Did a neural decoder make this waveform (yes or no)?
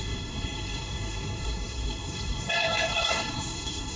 yes